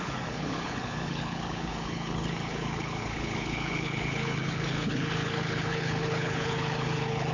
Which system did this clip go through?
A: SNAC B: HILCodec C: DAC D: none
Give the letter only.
B